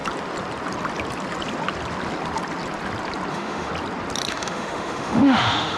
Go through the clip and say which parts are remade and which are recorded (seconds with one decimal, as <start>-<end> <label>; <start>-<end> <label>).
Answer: 0.0-3.3 recorded; 3.3-3.7 remade; 3.7-4.3 recorded; 4.3-5.8 remade